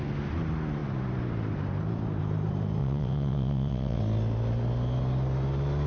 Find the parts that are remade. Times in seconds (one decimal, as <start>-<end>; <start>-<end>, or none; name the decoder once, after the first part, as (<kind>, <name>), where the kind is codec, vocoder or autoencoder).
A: 2.8-4.0 (vocoder, WaveNeXt)